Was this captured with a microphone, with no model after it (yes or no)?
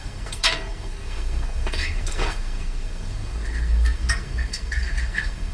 no